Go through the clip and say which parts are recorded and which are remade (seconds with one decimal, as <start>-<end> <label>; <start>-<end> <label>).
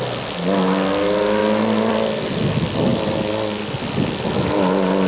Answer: 0.0-2.9 recorded; 2.9-3.8 remade; 3.8-5.1 recorded